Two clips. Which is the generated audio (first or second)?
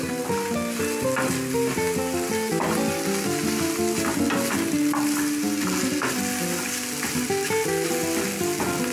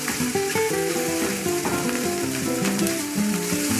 second